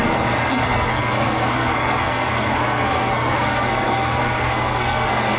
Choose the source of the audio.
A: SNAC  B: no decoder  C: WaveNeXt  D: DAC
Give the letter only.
A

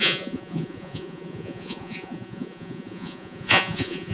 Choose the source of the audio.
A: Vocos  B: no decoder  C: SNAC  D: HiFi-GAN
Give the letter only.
A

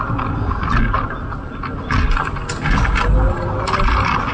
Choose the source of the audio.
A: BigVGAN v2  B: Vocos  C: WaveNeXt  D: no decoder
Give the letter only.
D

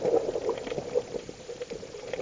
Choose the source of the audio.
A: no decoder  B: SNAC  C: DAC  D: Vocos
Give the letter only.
A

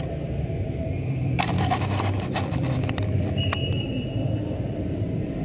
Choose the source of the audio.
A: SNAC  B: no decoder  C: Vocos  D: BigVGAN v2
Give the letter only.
D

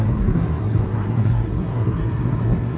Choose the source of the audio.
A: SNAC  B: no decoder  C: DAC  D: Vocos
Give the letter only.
A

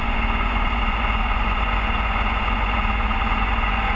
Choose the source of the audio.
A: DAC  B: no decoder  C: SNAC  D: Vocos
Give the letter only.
D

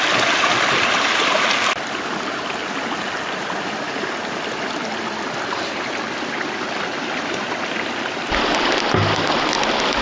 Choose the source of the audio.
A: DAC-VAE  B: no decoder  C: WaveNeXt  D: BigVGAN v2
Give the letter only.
B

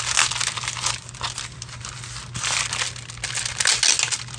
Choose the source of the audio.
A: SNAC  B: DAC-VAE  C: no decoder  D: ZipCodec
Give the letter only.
C